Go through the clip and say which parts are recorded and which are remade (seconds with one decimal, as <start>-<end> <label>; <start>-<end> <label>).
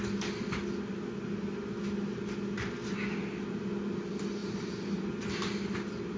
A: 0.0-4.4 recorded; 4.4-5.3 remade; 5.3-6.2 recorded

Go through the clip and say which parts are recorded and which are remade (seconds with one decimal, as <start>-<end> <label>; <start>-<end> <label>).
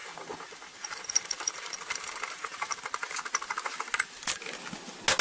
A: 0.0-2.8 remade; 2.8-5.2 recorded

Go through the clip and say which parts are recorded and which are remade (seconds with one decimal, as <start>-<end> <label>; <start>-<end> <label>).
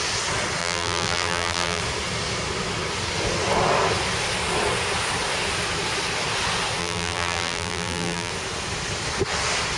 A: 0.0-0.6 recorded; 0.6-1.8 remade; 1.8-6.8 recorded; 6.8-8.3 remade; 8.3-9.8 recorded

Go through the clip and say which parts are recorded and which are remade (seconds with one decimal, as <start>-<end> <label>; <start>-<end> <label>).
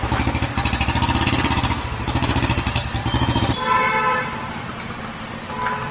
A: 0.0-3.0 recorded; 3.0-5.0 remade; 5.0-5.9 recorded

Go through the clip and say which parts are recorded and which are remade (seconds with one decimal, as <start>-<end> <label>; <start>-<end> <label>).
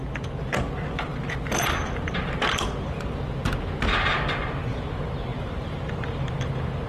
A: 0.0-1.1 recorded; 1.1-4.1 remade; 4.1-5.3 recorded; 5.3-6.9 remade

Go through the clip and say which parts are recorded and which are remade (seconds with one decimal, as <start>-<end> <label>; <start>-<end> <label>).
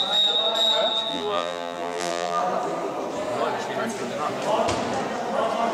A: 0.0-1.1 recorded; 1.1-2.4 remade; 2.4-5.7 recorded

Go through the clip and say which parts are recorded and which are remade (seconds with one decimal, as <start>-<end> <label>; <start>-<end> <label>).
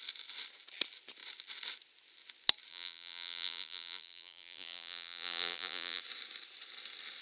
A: 0.0-2.7 recorded; 2.7-6.0 remade; 6.0-7.2 recorded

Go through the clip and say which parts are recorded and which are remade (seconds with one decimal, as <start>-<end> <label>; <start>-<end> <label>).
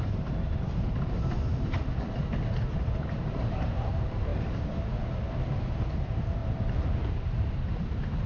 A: 0.0-1.5 remade; 1.5-3.2 recorded; 3.2-4.3 remade; 4.3-6.0 recorded; 6.0-8.3 remade